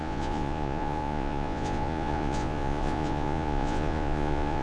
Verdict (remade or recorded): remade